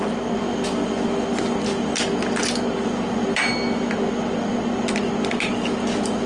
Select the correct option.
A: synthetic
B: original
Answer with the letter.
B